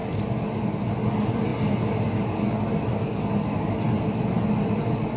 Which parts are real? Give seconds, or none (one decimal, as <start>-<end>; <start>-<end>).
0.0-5.2